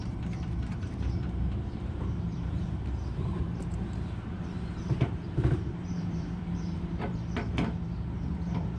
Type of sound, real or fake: fake